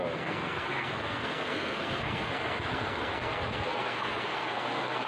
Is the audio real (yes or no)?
no